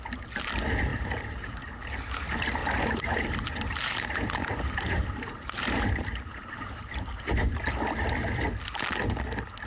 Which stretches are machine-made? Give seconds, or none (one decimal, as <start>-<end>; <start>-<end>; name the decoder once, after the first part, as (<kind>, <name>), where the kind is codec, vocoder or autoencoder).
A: 0.9-1.6 (vocoder, BigVGAN v2); 2.6-7.9

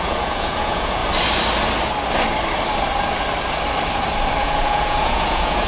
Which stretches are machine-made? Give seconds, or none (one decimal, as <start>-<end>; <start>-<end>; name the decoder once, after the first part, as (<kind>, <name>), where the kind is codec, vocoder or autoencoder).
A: 0.0-1.0 (vocoder, Vocos); 4.4-5.7